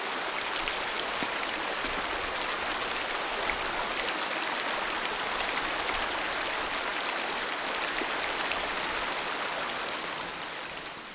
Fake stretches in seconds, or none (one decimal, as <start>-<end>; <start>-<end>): none